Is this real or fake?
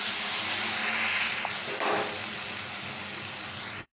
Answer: real